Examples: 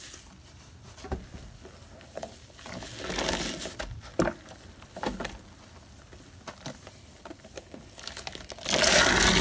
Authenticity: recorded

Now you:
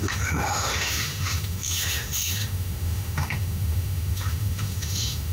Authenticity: remade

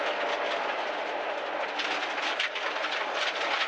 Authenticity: recorded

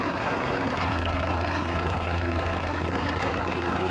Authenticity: remade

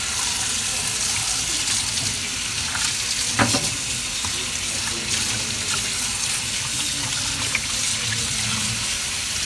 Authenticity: recorded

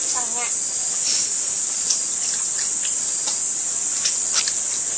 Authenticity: recorded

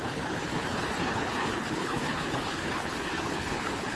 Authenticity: remade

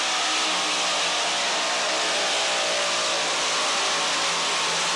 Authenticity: recorded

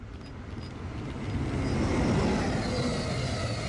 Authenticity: recorded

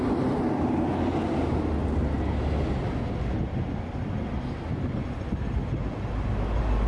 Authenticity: recorded